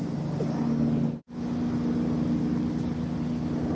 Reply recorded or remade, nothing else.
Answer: recorded